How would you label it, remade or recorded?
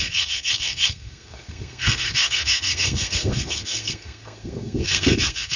remade